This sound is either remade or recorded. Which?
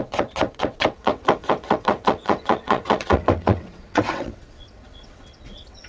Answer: remade